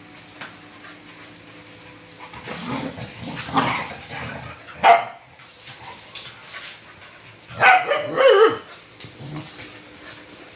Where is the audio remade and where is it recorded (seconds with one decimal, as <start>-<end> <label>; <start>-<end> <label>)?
0.0-10.6 recorded